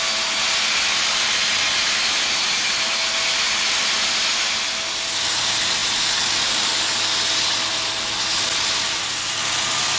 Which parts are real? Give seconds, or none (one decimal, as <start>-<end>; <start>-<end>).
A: 0.0-10.0